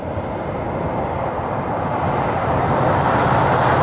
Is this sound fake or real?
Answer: fake